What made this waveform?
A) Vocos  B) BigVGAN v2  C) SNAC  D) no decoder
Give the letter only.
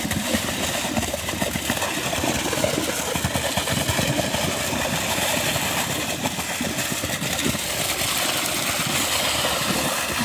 D